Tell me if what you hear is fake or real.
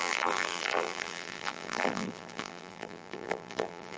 fake